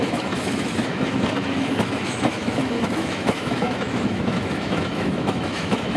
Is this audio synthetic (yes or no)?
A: yes